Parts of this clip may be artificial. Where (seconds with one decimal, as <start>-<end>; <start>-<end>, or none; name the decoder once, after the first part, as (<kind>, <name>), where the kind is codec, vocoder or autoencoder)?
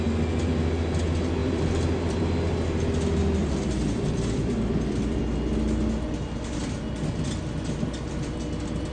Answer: 1.4-2.2 (vocoder, BigVGAN v2); 3.4-5.2